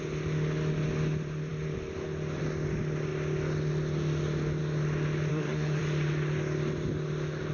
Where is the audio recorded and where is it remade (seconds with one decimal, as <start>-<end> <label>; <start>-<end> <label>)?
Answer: 0.0-5.3 recorded; 5.3-5.8 remade; 5.8-7.5 recorded

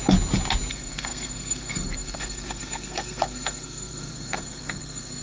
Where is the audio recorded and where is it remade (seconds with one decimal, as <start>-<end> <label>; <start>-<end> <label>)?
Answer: 0.0-0.7 recorded; 0.7-5.2 remade

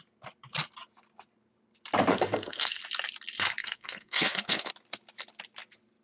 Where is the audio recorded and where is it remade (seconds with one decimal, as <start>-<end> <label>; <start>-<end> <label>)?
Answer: 0.0-2.1 recorded; 2.1-2.8 remade; 2.8-3.6 recorded; 3.6-4.7 remade; 4.7-6.0 recorded

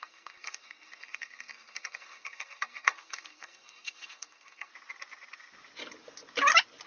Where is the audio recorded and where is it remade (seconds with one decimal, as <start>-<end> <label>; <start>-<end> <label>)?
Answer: 0.0-4.7 remade; 4.7-6.9 recorded

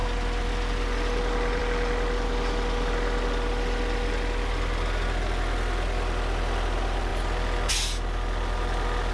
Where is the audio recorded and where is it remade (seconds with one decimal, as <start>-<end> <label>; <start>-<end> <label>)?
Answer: 0.0-9.1 recorded

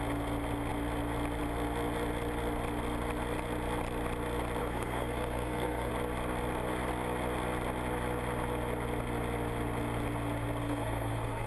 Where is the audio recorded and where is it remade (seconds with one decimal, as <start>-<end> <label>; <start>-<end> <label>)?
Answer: 0.0-4.6 recorded; 4.6-5.9 remade; 5.9-10.6 recorded; 10.6-11.5 remade